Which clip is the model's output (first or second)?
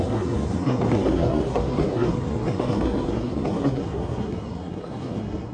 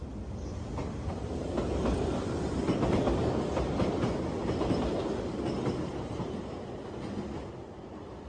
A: first